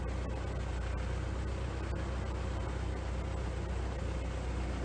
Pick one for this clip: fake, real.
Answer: real